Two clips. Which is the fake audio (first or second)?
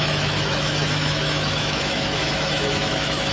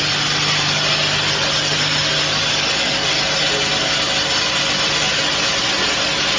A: first